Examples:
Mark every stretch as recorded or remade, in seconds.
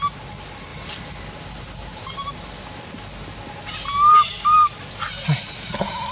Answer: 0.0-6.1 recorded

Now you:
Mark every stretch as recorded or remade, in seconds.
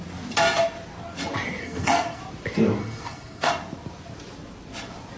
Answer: 0.0-1.6 recorded; 1.6-2.2 remade; 2.2-2.8 recorded; 2.8-3.5 remade; 3.5-5.2 recorded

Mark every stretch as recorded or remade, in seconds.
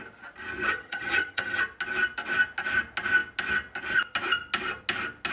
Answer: 0.0-0.7 recorded; 0.7-1.6 remade; 1.6-5.3 recorded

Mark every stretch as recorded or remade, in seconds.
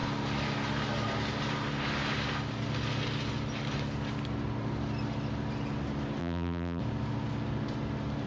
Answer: 0.0-6.2 recorded; 6.2-6.8 remade; 6.8-8.3 recorded